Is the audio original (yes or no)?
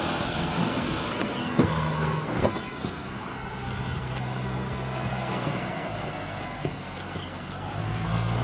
no